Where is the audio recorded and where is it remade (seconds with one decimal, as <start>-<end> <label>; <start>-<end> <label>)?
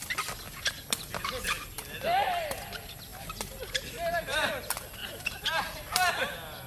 0.0-3.1 recorded; 3.1-4.5 remade; 4.5-5.0 recorded; 5.0-6.1 remade; 6.1-6.7 recorded